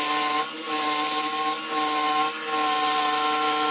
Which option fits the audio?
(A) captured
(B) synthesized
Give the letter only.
A